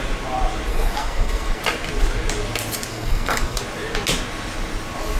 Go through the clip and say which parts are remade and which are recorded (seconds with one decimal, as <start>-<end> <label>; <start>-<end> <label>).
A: 0.0-0.7 recorded; 0.7-1.6 remade; 1.6-2.9 recorded; 2.9-3.6 remade; 3.6-5.2 recorded